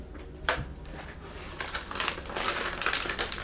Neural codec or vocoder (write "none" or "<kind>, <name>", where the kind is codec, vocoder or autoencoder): none